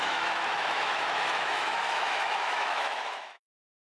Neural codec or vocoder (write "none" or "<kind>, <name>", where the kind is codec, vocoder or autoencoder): autoencoder, DAC-VAE